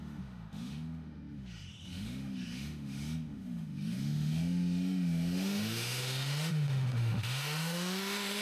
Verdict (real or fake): fake